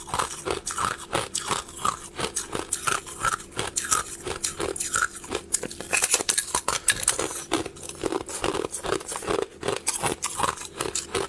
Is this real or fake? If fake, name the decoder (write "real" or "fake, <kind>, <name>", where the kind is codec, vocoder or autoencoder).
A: real